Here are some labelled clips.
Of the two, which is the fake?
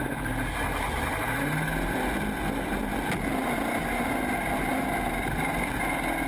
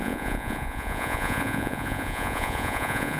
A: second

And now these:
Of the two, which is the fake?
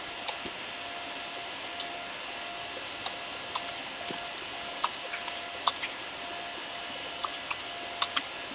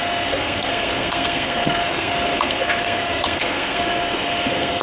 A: second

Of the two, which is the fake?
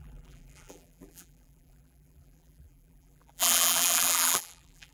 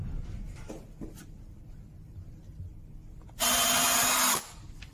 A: first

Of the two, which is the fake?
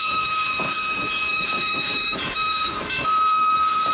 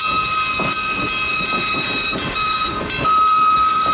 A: first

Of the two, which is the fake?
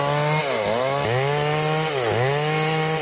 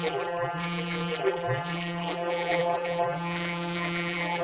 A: second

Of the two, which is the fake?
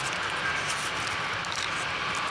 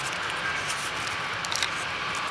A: first